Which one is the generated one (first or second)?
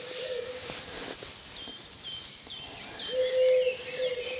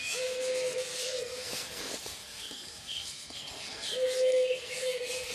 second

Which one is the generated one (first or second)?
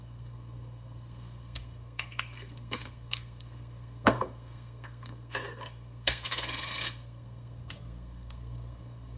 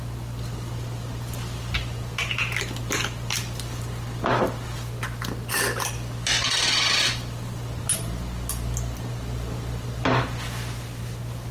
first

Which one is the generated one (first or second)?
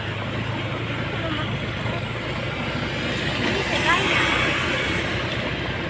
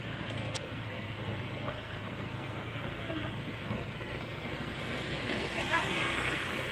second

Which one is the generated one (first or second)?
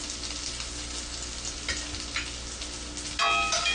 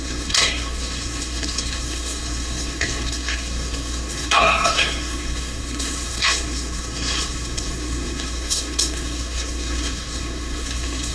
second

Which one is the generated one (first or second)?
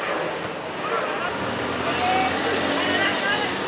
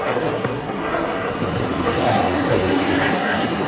second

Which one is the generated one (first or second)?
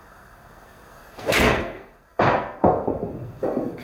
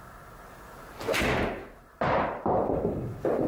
first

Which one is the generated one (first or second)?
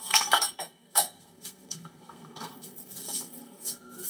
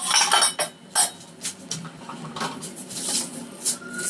first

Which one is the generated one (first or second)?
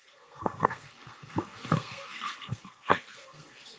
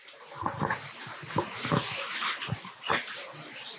first